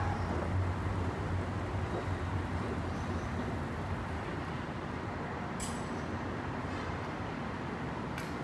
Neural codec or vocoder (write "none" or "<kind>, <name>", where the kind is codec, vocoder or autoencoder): none